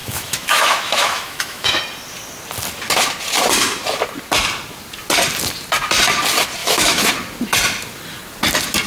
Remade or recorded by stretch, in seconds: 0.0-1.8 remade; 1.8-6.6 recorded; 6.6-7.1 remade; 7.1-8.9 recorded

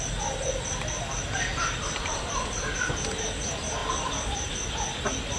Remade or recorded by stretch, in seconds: 0.0-1.5 recorded; 1.5-3.0 remade; 3.0-3.8 recorded; 3.8-4.5 remade; 4.5-5.4 recorded

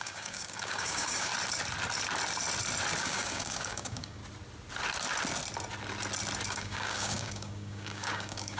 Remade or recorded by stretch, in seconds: 0.0-1.3 remade; 1.3-3.0 recorded; 3.0-4.2 remade; 4.2-6.5 recorded; 6.5-8.6 remade

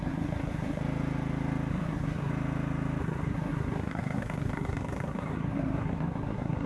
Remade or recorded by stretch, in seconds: 0.0-0.8 remade; 0.8-1.7 recorded; 1.7-2.3 remade; 2.3-3.0 recorded; 3.0-6.7 remade

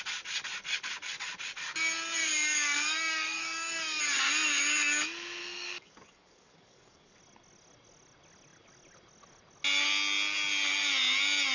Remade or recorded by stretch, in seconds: 0.0-2.2 recorded; 2.2-4.0 remade; 4.0-5.4 recorded; 5.4-7.2 remade; 7.2-11.5 recorded

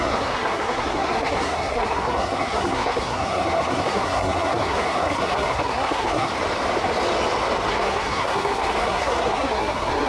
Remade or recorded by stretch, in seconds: 0.0-6.3 remade; 6.3-7.7 recorded; 7.7-10.1 remade